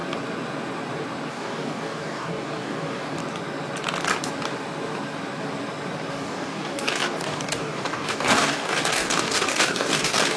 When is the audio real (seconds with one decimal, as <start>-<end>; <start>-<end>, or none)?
0.0-1.3; 3.2-6.1